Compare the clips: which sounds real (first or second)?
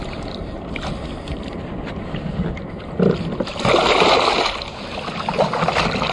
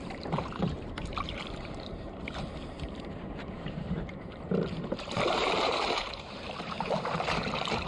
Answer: first